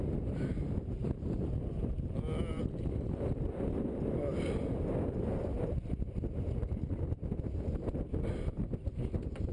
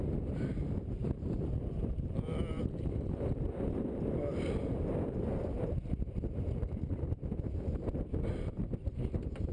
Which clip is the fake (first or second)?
second